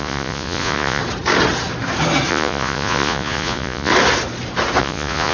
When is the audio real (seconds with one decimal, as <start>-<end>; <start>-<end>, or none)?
1.0-2.3; 3.9-4.8